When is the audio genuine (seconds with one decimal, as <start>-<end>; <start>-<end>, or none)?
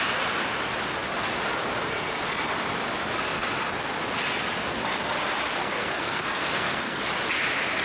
0.0-5.6; 7.0-7.8